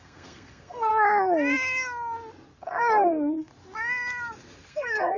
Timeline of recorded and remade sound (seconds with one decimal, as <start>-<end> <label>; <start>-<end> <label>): 0.0-0.9 remade; 0.9-2.6 recorded; 2.6-3.5 remade; 3.5-4.7 recorded; 4.7-5.2 remade